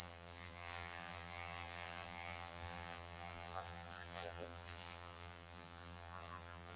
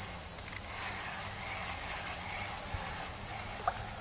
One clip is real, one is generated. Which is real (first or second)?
second